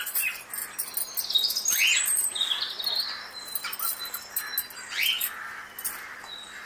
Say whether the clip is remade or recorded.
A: recorded